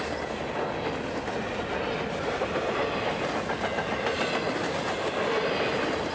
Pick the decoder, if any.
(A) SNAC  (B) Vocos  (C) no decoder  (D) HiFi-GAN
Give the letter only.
C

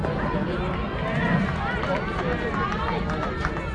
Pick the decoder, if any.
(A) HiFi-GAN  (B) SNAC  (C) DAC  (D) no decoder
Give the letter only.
D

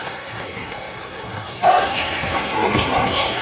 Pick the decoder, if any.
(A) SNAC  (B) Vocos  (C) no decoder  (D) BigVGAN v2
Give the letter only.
A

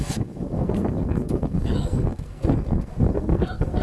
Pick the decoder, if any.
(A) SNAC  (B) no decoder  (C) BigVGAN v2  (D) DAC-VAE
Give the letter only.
A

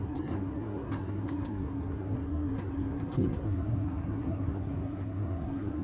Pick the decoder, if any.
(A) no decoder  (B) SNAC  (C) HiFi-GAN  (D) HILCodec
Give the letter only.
B